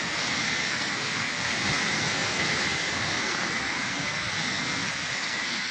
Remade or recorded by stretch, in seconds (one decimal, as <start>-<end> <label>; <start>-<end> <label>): 0.0-5.7 remade